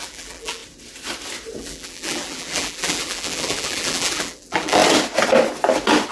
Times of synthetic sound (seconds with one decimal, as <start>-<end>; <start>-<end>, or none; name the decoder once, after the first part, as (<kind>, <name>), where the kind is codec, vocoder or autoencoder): 0.0-0.6 (vocoder, BigVGAN v2); 1.6-4.8